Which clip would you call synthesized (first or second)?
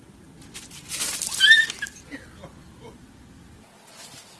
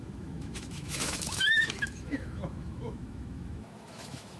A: second